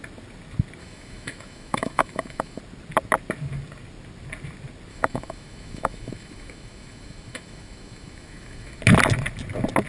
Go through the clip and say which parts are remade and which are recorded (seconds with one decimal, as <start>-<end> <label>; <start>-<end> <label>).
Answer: 0.0-0.8 recorded; 0.8-2.6 remade; 2.6-4.9 recorded; 4.9-8.8 remade; 8.8-9.9 recorded